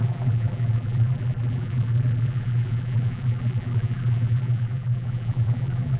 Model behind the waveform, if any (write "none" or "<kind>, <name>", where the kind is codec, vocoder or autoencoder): vocoder, BigVGAN v2